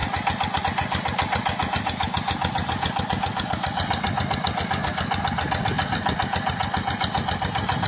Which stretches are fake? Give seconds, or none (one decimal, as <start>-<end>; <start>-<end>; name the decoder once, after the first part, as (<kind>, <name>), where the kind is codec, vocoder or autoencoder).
none